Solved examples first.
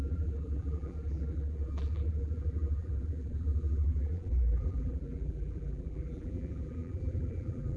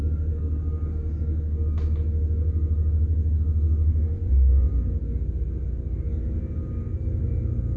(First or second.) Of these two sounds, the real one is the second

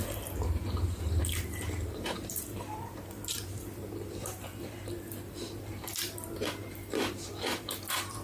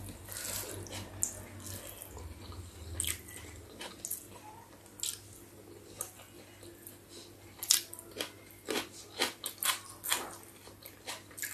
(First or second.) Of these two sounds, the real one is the second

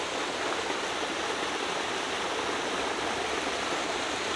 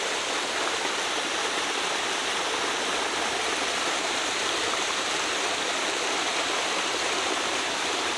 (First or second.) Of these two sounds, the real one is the first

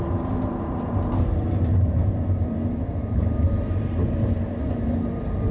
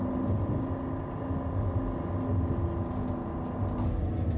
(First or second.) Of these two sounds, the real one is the second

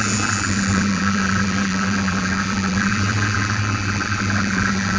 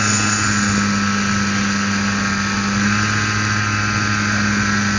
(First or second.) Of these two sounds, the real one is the second